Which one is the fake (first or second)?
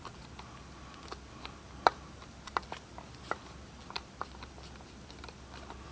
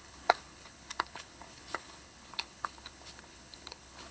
second